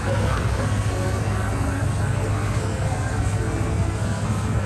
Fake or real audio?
fake